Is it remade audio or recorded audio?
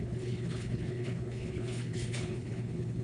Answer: remade